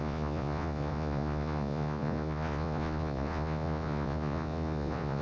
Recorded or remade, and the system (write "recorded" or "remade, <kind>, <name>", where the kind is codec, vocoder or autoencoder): remade, vocoder, Vocos